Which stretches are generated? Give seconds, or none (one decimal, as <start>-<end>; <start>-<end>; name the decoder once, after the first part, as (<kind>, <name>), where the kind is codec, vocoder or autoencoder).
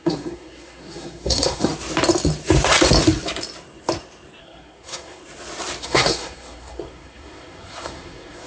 0.0-1.7 (codec, SNAC); 4.4-5.2; 5.8-8.5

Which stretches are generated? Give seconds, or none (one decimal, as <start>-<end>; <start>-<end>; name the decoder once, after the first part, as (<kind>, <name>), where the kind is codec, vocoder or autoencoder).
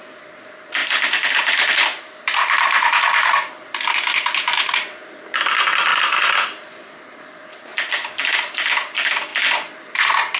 0.8-3.5 (vocoder, BigVGAN v2); 7.7-8.4; 9.3-10.4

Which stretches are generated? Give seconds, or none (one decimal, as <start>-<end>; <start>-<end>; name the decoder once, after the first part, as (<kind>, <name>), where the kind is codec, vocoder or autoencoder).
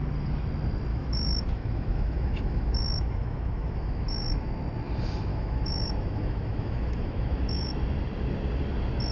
0.9-4.5 (autoencoder, DAC-VAE); 5.3-7.7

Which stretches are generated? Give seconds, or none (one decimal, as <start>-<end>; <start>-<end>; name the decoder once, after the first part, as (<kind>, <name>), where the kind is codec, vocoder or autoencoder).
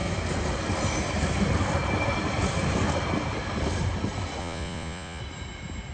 4.4-5.2 (vocoder, Vocos)